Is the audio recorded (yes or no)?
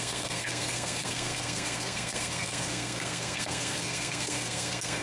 no